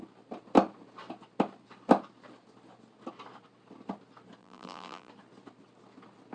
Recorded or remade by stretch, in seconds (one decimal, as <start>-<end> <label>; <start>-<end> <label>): 0.0-4.4 recorded; 4.4-5.1 remade; 5.1-6.3 recorded